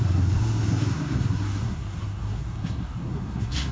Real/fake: fake